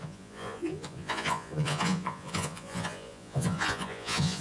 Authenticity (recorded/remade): remade